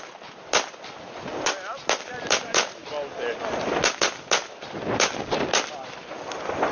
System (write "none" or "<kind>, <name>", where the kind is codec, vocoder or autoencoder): none